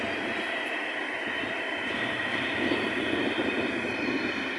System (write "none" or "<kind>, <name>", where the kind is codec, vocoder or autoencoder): none